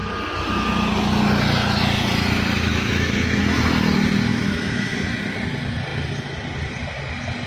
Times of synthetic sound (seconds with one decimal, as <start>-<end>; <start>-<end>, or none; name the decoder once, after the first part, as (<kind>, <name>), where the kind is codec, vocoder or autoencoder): 2.7-3.4 (autoencoder, DAC-VAE); 4.3-5.2